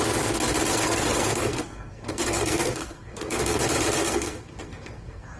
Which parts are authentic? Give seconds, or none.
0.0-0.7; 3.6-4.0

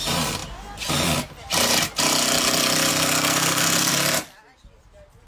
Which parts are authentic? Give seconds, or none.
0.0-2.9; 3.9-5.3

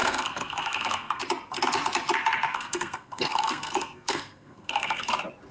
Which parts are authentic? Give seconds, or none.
1.2-2.5; 5.1-5.5

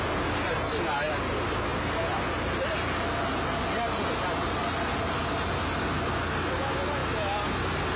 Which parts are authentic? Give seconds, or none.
0.0-8.0

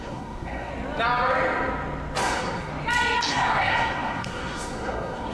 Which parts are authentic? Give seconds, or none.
0.7-2.2; 2.7-3.3

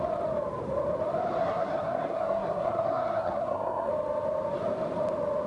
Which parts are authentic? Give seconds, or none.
0.0-1.4; 3.9-5.5

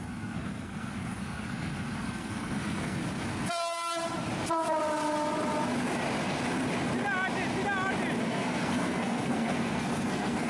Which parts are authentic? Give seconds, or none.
3.0-8.2